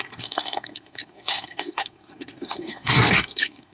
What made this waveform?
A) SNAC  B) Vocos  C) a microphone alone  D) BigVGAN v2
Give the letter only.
A